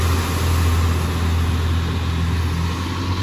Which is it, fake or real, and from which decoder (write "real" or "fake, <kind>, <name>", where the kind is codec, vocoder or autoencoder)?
real